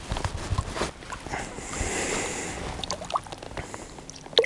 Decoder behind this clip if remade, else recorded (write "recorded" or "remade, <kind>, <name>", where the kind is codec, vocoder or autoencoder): recorded